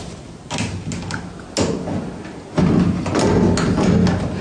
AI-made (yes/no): no